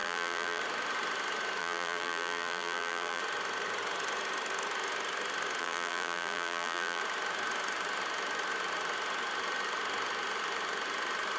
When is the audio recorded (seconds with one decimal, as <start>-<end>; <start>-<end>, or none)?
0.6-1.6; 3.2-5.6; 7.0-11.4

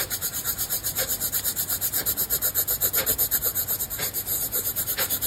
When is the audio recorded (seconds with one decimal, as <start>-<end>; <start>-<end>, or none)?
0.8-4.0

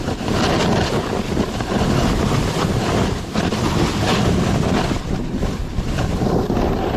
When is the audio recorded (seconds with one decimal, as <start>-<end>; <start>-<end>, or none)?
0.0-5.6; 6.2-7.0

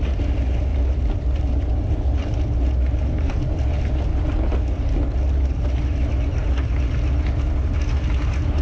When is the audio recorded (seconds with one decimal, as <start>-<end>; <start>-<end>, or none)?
0.0-0.7; 3.6-4.1; 5.7-8.6

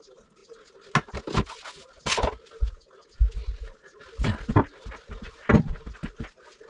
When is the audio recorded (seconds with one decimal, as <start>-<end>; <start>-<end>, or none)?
0.4-4.0